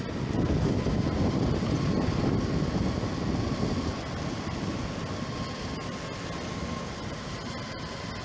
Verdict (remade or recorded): recorded